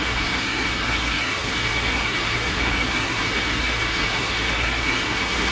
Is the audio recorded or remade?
remade